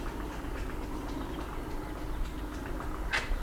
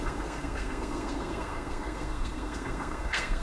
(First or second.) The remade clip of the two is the second